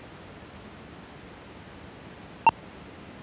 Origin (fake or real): real